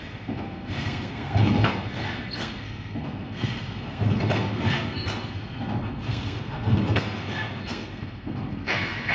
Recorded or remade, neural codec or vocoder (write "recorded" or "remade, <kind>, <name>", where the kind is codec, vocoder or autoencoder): remade, codec, SNAC